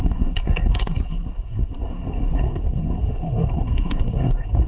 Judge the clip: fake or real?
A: fake